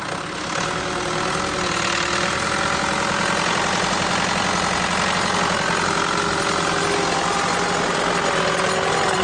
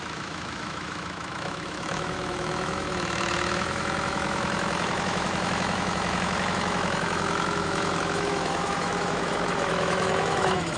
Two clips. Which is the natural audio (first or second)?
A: first